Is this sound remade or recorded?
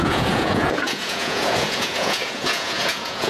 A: remade